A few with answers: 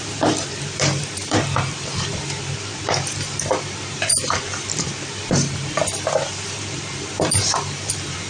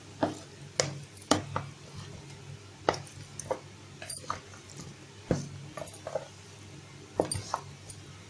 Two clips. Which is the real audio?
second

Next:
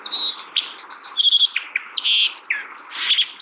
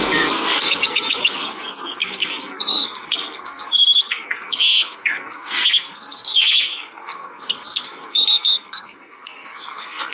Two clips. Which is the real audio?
first